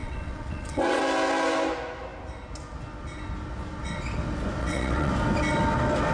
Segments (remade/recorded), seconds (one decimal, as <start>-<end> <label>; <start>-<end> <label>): 0.0-1.0 remade; 1.0-4.6 recorded; 4.6-5.1 remade; 5.1-6.1 recorded